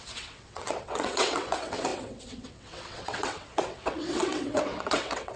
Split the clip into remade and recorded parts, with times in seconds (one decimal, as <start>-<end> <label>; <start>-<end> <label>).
0.0-5.4 remade